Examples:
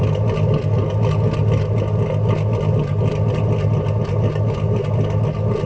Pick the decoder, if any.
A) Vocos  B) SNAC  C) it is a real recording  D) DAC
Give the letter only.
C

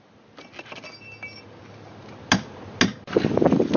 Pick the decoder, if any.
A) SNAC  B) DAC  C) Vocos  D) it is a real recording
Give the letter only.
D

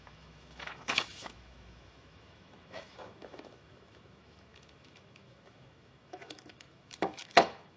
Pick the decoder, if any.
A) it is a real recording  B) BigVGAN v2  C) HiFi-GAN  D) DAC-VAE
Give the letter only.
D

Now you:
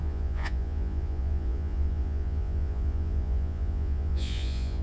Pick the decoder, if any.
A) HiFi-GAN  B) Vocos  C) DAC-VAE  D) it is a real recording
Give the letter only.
B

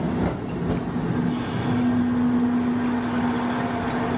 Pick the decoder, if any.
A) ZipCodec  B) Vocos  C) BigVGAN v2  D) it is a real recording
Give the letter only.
D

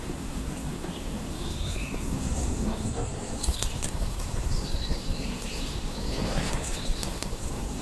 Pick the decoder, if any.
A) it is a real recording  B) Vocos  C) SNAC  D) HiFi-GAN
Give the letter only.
C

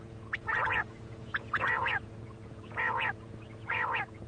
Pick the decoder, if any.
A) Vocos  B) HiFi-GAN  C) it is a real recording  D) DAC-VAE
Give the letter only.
A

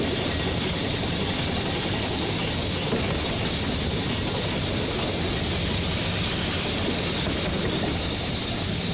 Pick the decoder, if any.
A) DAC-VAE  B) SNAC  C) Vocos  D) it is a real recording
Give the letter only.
D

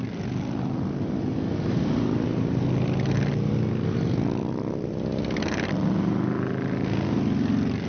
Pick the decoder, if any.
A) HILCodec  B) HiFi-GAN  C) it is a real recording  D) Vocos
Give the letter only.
C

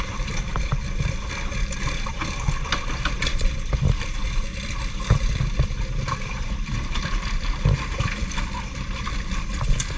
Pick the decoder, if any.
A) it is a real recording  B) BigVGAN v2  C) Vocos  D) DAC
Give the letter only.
B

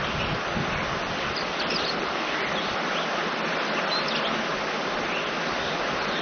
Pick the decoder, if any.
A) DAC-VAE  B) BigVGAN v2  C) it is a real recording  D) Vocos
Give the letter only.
C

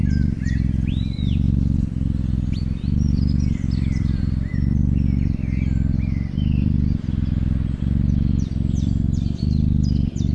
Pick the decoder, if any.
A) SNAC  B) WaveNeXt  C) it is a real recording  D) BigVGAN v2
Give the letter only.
D